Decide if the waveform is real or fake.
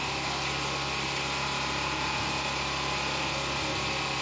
real